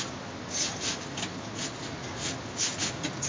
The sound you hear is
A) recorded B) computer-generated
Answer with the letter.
A